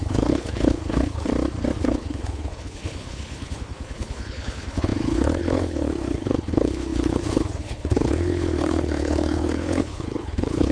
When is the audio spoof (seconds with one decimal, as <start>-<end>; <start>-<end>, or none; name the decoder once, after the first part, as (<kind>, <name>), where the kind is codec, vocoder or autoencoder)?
0.0-1.3 (codec, HILCodec); 1.8-10.7

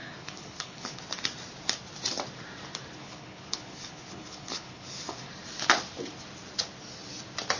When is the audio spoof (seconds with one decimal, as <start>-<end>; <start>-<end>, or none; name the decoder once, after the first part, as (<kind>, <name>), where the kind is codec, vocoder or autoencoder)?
0.0-1.0 (codec, HILCodec); 3.0-5.3

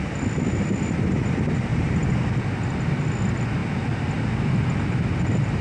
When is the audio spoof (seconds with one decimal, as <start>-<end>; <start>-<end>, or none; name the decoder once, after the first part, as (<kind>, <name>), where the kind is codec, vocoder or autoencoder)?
none

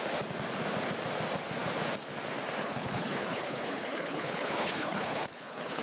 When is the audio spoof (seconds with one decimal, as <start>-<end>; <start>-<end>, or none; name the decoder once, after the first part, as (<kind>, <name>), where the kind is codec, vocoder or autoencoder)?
2.6-5.8 (codec, HILCodec)